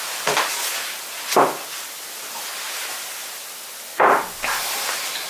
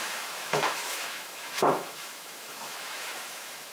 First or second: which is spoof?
second